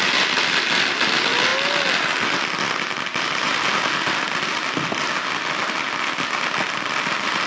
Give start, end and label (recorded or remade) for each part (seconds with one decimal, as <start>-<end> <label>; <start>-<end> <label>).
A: 0.0-7.5 recorded